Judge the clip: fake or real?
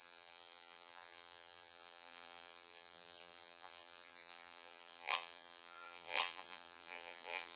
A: fake